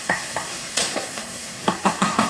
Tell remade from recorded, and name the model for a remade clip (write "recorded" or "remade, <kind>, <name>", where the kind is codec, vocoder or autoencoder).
remade, codec, SNAC